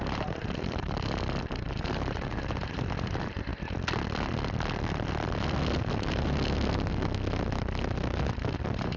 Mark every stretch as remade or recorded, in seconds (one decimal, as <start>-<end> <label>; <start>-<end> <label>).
0.0-3.5 remade; 3.5-8.6 recorded; 8.6-9.0 remade

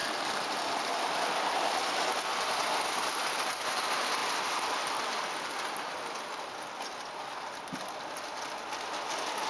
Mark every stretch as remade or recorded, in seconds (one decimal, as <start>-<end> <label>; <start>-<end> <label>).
0.0-1.7 remade; 1.7-4.2 recorded; 4.2-5.0 remade; 5.0-9.5 recorded

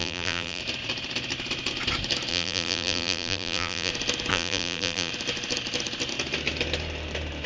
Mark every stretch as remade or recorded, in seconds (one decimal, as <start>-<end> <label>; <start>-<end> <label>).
0.0-0.6 remade; 0.6-2.3 recorded; 2.3-3.9 remade; 3.9-4.3 recorded; 4.3-5.1 remade; 5.1-7.5 recorded

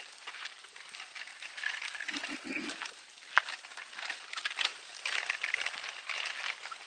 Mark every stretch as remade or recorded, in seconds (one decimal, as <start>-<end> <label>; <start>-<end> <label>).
0.0-4.7 recorded; 4.7-6.0 remade; 6.0-6.9 recorded

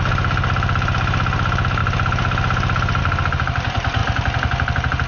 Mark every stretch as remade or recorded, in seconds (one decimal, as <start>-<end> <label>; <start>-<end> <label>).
0.0-1.8 remade; 1.8-3.0 recorded; 3.0-5.1 remade